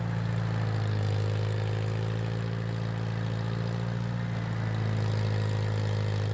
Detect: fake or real real